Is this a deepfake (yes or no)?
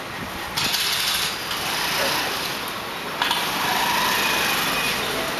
no